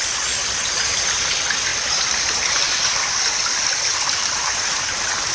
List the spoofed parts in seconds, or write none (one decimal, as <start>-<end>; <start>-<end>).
1.7-5.3

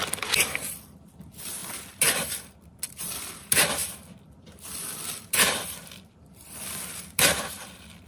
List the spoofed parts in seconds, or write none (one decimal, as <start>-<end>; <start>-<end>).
0.0-8.1

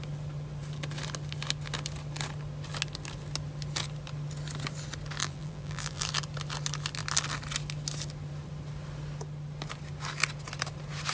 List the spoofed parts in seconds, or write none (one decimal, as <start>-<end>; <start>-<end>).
5.2-6.1

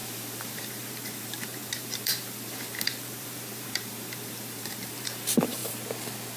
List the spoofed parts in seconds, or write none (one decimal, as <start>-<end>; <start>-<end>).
0.0-5.6